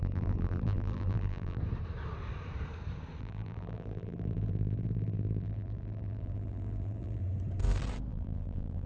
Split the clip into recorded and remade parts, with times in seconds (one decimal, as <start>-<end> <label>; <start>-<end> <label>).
0.0-1.6 remade; 1.6-3.2 recorded; 3.2-7.2 remade; 7.2-8.1 recorded; 8.1-8.9 remade